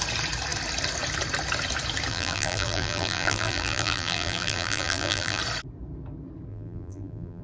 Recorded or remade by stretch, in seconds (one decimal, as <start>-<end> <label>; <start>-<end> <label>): 0.0-2.1 recorded; 2.1-5.4 remade; 5.4-6.5 recorded; 6.5-7.4 remade